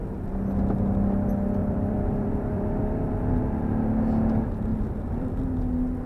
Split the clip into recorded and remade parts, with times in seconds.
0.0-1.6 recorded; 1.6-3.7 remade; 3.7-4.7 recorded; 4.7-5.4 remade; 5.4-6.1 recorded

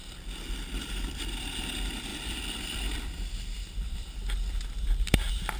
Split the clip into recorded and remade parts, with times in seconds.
0.0-1.7 remade; 1.7-2.1 recorded; 2.1-4.2 remade; 4.2-5.6 recorded

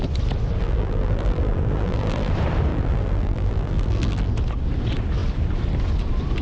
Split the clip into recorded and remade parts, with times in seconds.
0.0-0.6 recorded; 0.6-2.3 remade; 2.3-2.7 recorded; 2.7-4.3 remade; 4.3-6.4 recorded

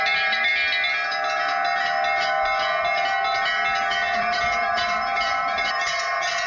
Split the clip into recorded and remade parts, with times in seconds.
0.0-0.5 remade; 0.5-4.2 recorded; 4.2-6.5 remade

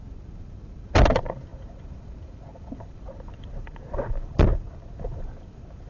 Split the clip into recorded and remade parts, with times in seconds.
0.0-5.9 remade